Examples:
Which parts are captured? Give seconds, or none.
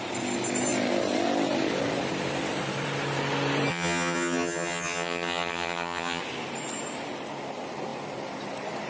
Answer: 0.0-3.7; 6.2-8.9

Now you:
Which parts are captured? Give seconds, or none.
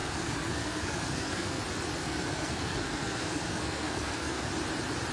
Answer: 1.6-2.0; 4.5-5.1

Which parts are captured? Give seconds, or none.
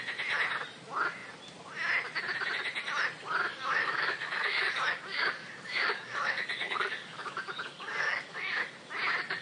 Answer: 0.0-3.5; 8.7-9.4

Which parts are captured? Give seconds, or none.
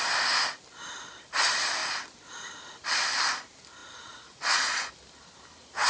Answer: 0.0-3.8; 4.9-5.9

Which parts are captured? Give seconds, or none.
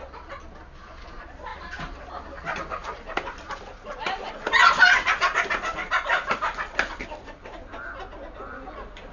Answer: 0.0-1.5; 2.2-2.8; 4.3-9.1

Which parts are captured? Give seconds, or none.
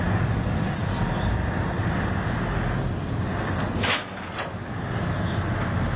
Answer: 0.0-6.0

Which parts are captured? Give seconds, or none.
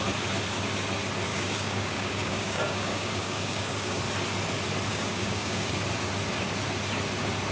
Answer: 0.0-1.3; 4.0-4.9; 5.7-7.5